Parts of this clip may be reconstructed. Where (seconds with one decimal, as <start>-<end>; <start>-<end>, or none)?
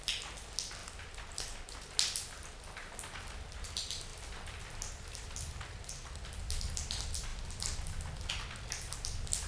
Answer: none